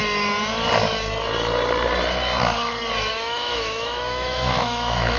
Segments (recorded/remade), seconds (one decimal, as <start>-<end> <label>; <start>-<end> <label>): 0.0-3.1 recorded; 3.1-5.2 remade